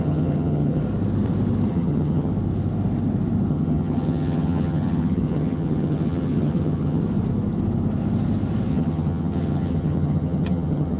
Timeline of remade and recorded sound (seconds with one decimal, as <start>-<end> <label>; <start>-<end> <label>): 0.0-0.8 remade; 0.8-1.7 recorded; 1.7-2.3 remade; 2.3-3.5 recorded; 3.5-7.0 remade; 7.0-8.7 recorded; 8.7-11.0 remade